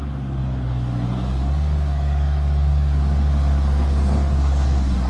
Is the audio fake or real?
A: fake